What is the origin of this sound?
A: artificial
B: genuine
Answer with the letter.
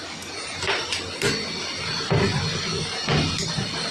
B